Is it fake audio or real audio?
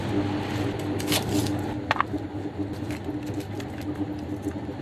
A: real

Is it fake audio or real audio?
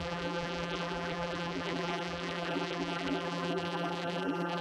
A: fake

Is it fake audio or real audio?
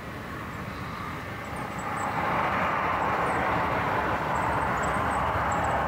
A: fake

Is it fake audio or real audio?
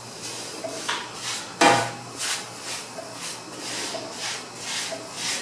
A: fake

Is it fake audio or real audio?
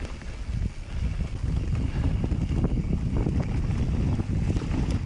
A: real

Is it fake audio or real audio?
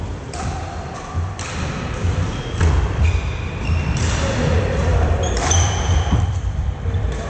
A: fake